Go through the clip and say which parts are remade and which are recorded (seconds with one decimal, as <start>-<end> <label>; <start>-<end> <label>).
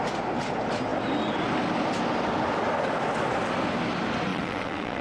0.0-4.3 recorded; 4.3-5.0 remade